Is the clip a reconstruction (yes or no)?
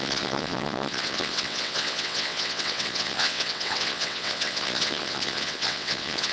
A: yes